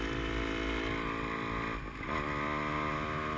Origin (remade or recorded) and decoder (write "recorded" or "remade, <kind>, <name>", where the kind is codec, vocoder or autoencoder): recorded